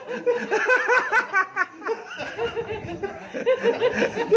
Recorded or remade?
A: recorded